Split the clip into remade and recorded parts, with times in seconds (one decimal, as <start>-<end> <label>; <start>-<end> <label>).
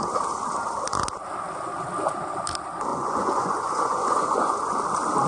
0.0-2.9 recorded; 2.9-4.8 remade; 4.8-5.3 recorded